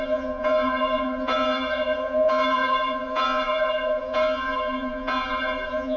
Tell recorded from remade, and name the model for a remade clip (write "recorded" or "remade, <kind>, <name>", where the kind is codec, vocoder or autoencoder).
remade, vocoder, Vocos